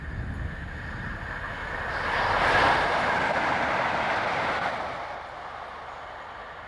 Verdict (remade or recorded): recorded